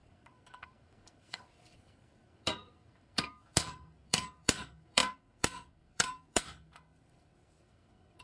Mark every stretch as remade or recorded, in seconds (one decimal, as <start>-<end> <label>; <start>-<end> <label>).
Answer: 0.0-8.2 remade